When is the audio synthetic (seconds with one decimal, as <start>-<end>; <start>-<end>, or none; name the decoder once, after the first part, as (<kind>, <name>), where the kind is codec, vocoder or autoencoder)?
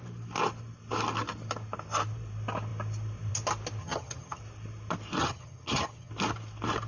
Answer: 3.8-4.4 (vocoder, HiFi-GAN); 5.2-6.1